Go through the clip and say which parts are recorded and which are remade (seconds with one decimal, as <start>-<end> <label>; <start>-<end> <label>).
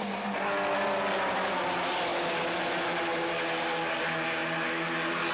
0.0-5.3 recorded